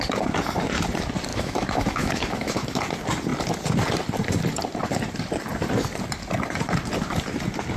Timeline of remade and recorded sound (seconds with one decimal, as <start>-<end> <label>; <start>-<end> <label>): 0.0-1.3 recorded; 1.3-2.8 remade; 2.8-7.8 recorded